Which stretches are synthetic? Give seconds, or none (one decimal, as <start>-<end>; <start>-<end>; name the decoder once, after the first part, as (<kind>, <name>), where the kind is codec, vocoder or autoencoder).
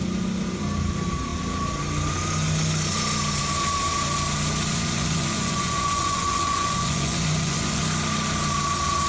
4.7-7.8 (vocoder, Vocos)